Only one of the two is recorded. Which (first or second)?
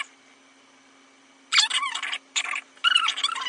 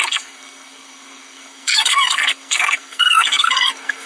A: first